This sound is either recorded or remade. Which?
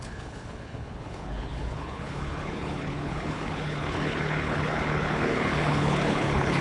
remade